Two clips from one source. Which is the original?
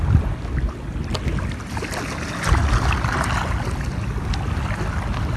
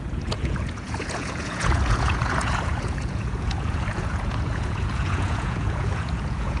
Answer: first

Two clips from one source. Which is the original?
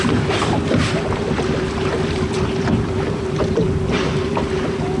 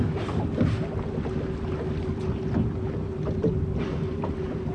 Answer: second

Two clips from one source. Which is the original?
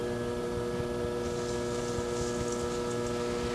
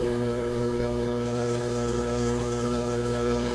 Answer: first